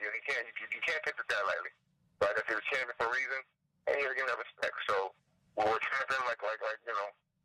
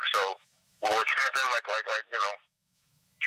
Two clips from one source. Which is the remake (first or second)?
second